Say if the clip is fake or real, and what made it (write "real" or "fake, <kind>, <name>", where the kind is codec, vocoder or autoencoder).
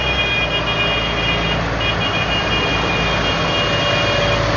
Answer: real